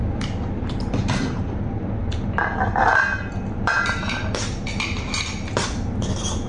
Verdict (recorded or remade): remade